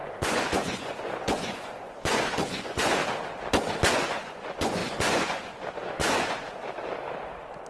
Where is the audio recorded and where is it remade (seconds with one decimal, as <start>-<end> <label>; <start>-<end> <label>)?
0.0-3.0 remade; 3.0-3.9 recorded; 3.9-6.6 remade; 6.6-7.7 recorded